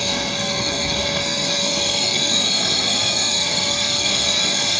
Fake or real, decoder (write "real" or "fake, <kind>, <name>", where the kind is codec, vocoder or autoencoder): fake, codec, SNAC